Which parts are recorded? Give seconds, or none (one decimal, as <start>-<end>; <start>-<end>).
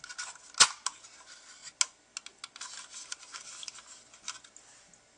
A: 0.0-5.2